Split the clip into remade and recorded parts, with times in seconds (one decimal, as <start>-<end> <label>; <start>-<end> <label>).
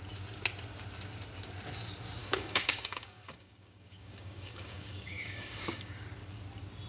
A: 0.0-2.2 recorded; 2.2-6.0 remade; 6.0-6.9 recorded